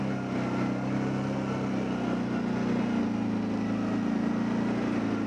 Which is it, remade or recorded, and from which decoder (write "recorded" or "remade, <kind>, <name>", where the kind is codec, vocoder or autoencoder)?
recorded